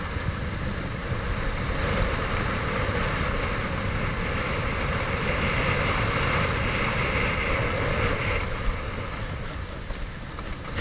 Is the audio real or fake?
real